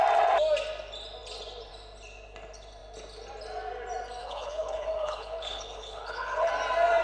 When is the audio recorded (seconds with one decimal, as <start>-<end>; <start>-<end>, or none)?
0.0-4.2; 6.5-7.0

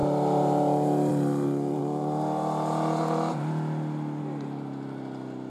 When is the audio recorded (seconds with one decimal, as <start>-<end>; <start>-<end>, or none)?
0.0-5.5

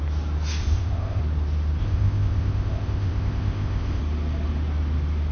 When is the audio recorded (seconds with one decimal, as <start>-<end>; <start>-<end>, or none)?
0.0-0.6; 1.2-1.8; 4.0-5.3

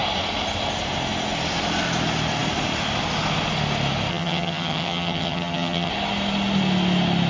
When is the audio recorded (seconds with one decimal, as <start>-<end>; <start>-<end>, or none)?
0.0-4.1; 5.9-7.3

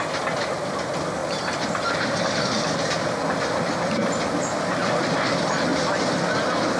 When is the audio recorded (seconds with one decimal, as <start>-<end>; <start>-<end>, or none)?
0.0-6.8

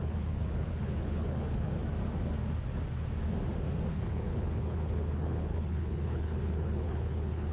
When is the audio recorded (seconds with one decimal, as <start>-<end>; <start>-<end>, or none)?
1.8-3.9